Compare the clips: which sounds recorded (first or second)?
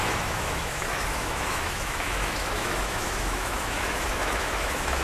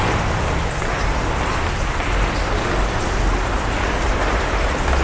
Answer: second